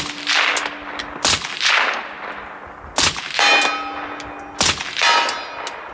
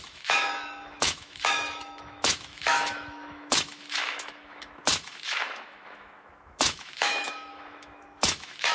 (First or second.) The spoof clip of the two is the second